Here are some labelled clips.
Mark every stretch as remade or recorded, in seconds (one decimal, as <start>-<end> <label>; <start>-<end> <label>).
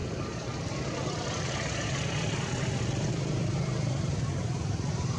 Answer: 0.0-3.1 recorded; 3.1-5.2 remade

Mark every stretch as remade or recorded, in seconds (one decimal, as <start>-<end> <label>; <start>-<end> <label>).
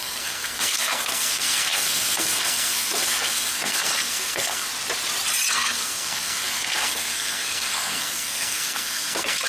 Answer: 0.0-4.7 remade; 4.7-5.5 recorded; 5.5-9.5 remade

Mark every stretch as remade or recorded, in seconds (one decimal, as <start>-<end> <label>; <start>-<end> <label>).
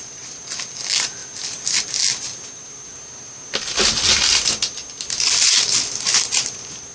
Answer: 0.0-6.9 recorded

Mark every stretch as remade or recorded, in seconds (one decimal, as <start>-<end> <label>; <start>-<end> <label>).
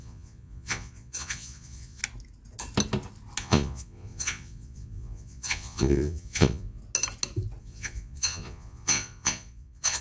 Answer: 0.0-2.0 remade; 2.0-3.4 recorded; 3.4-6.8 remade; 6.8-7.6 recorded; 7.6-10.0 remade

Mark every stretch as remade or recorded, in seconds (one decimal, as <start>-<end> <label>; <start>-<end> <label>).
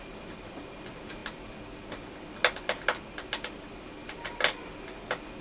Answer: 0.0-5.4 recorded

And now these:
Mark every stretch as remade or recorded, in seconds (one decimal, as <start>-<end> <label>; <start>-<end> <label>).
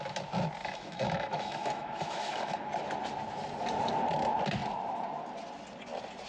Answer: 0.0-0.6 recorded; 0.6-2.6 remade; 2.6-6.3 recorded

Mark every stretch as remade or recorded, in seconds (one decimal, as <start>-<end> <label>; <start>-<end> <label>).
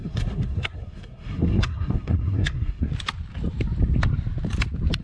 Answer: 0.0-2.9 remade; 2.9-5.0 recorded